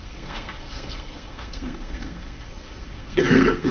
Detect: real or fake fake